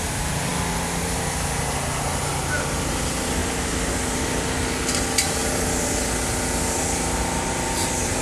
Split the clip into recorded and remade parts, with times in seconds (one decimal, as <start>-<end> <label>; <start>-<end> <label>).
0.0-0.5 remade; 0.5-2.3 recorded; 2.3-3.4 remade; 3.4-4.2 recorded; 4.2-5.4 remade; 5.4-7.5 recorded; 7.5-8.2 remade